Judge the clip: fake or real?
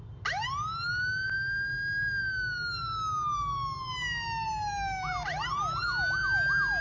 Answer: real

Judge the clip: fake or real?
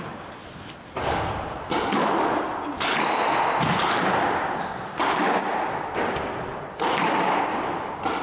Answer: real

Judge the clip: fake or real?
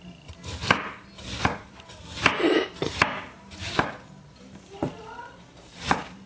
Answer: fake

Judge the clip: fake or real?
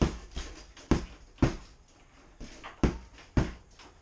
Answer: real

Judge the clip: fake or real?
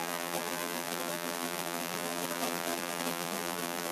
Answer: fake